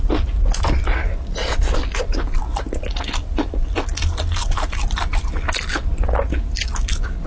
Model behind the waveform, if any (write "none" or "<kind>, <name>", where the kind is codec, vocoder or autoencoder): none